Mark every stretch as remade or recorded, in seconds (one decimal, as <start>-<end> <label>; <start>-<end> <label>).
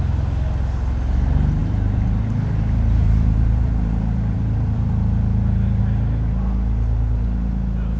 0.0-1.6 recorded; 1.6-5.8 remade; 5.8-8.0 recorded